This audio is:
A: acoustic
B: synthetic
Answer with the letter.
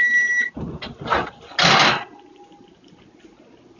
A